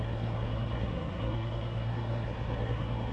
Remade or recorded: remade